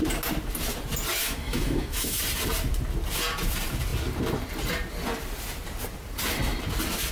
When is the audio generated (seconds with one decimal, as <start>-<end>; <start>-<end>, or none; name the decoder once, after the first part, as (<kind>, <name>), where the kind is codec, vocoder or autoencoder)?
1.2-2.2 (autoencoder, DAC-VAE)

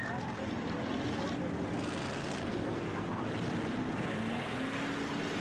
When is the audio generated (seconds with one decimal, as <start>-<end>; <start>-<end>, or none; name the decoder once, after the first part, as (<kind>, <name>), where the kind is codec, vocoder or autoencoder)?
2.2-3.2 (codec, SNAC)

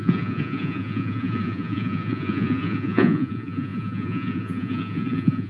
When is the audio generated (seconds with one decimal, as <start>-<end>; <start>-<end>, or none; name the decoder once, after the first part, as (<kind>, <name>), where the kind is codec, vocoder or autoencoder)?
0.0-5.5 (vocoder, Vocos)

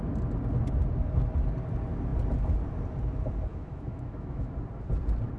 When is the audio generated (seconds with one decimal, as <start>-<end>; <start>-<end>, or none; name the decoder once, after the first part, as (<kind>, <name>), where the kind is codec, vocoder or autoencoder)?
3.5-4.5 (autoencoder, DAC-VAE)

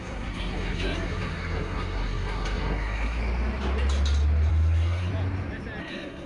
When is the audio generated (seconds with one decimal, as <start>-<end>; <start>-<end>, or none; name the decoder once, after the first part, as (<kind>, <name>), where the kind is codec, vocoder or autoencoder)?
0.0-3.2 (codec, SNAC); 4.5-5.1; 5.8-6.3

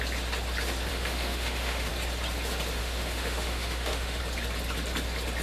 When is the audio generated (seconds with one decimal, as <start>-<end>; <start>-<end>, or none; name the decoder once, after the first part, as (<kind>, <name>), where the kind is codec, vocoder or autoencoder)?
0.9-1.9 (autoencoder, DAC-VAE); 2.8-4.2